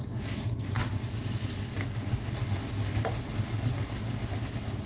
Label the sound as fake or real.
real